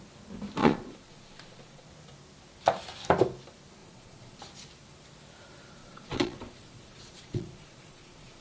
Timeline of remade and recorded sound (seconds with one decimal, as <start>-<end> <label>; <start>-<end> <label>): 0.0-0.6 recorded; 0.6-1.9 remade; 1.9-3.8 recorded; 3.8-4.4 remade; 4.4-5.8 recorded; 5.8-8.4 remade